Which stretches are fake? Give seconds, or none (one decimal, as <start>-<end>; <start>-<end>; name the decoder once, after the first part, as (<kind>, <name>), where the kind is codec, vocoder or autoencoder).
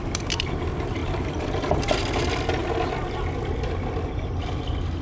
0.0-2.6 (vocoder, BigVGAN v2)